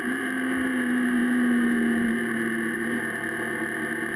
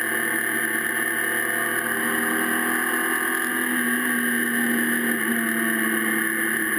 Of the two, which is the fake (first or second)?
first